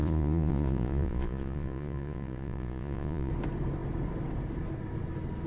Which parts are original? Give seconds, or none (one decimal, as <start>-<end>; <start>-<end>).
3.3-5.5